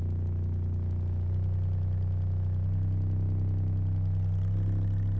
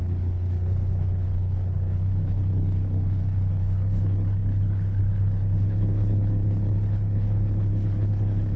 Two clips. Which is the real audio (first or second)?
first